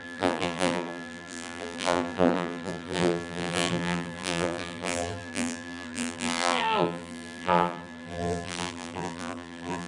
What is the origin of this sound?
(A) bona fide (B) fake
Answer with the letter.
B